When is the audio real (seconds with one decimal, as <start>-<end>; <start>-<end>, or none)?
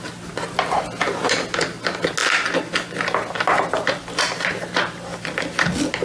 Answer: 0.0-6.0